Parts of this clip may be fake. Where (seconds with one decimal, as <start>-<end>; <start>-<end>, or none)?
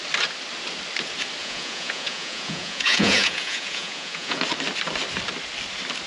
1.4-4.4